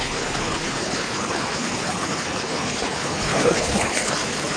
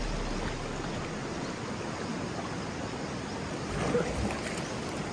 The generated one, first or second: first